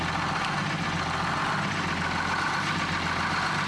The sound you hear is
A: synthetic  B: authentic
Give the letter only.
B